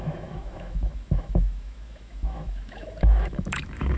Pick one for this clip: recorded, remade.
remade